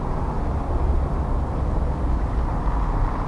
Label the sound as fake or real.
real